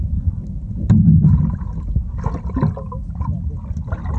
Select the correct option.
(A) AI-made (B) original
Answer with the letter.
B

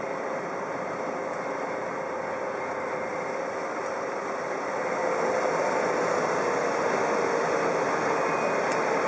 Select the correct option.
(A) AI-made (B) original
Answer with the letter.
B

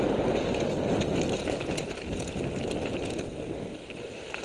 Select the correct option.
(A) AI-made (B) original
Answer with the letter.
B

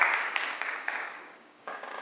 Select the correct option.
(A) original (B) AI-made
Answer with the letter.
B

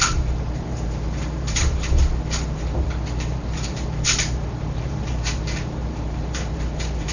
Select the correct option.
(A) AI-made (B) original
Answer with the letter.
A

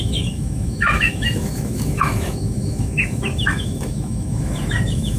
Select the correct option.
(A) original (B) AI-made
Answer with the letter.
B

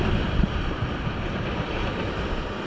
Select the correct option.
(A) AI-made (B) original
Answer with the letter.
B